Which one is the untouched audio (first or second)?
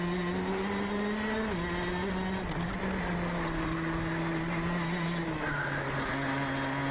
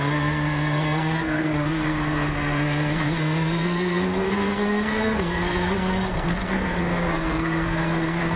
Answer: first